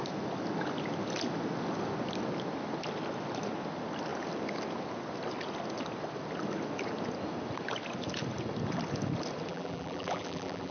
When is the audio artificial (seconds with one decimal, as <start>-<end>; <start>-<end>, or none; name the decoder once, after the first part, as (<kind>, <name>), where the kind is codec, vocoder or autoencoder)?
9.5-10.7 (vocoder, BigVGAN v2)